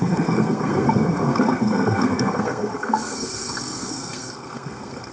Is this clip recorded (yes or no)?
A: no